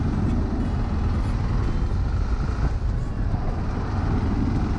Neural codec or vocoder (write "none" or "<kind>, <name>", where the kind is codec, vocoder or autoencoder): none